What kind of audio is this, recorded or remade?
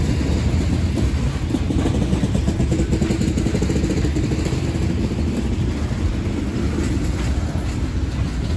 recorded